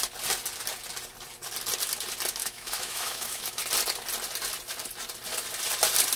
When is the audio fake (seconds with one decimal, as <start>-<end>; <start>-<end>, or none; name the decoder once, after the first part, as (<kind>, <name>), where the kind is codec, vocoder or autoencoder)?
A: 2.4-3.6 (autoencoder, DAC-VAE)